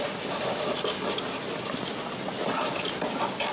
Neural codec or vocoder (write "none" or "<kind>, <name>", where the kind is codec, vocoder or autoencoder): none